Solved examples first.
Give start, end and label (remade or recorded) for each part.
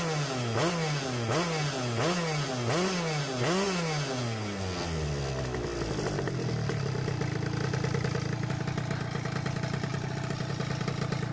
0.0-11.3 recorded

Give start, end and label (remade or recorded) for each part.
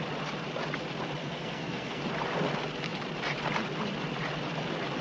0.0-1.2 recorded; 1.2-2.0 remade; 2.0-5.0 recorded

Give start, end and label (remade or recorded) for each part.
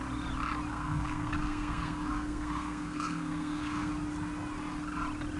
0.0-0.7 recorded; 0.7-3.9 remade; 3.9-5.4 recorded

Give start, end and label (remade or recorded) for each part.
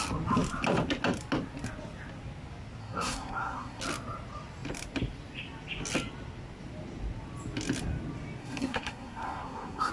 0.0-2.8 recorded; 2.8-3.8 remade; 3.8-8.4 recorded; 8.4-9.9 remade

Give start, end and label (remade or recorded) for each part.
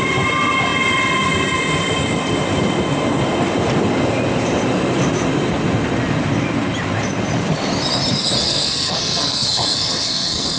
0.0-8.4 recorded; 8.4-10.6 remade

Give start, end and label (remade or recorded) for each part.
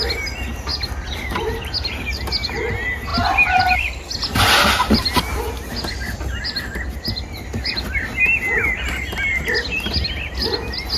0.0-11.0 recorded